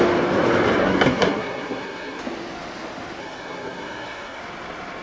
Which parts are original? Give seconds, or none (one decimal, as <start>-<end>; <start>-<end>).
0.0-0.8; 2.2-3.2; 4.4-5.0